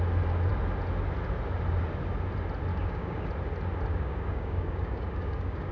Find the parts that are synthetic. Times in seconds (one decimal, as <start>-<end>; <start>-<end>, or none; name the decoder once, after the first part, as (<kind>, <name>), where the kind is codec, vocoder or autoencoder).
2.7-3.3 (codec, DAC); 3.9-5.7